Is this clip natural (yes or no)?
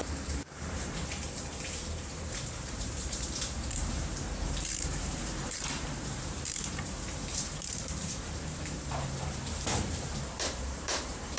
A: no